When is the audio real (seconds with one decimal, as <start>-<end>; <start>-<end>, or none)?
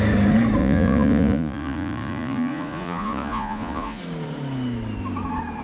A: 0.0-0.6; 4.0-5.6